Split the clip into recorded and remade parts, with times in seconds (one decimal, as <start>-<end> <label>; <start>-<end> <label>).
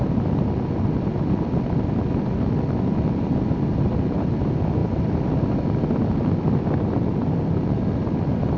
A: 0.0-8.6 recorded